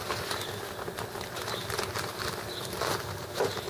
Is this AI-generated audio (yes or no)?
no